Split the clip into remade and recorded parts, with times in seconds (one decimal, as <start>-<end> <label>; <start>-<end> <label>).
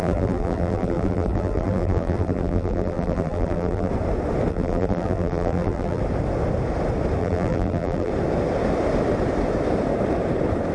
0.0-3.9 remade; 3.9-4.5 recorded; 4.5-6.0 remade; 6.0-7.2 recorded; 7.2-8.1 remade; 8.1-10.7 recorded